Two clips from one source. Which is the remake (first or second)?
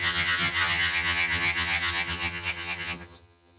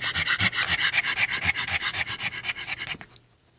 first